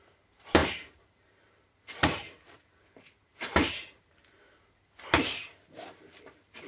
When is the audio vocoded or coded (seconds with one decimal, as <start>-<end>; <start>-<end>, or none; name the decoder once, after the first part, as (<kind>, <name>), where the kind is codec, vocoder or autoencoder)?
0.6-4.6 (vocoder, BigVGAN v2); 5.4-6.7